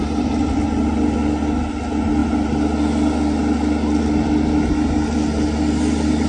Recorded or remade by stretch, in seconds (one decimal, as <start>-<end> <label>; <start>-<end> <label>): 0.0-6.3 recorded